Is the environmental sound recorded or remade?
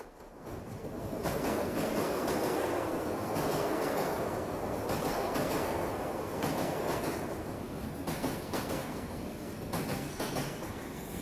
remade